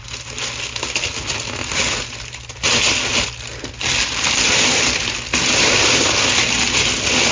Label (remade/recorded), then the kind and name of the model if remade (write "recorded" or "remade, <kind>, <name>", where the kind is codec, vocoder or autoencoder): recorded